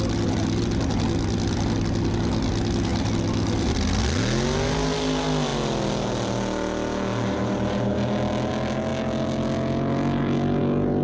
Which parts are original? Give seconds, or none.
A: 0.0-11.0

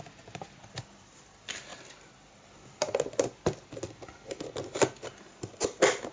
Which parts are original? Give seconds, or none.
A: 0.0-6.1

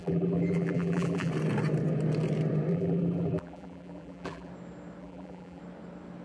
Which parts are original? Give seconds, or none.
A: 1.3-2.7; 4.5-5.0; 5.6-6.2

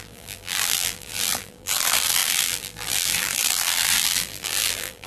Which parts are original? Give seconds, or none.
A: none

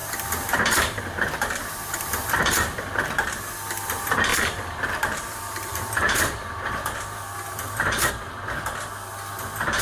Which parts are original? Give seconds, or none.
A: 2.9-4.3; 8.1-9.8

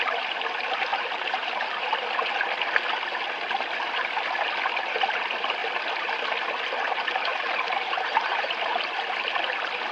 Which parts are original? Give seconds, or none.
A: 0.0-0.9; 1.9-7.3; 8.8-9.9

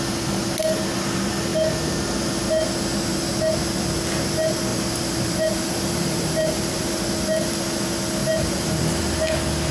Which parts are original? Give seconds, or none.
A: 0.0-4.7; 6.9-8.2; 8.8-9.7